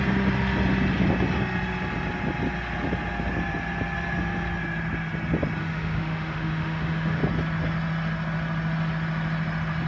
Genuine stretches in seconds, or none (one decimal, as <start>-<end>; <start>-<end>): 0.0-5.6; 7.2-9.9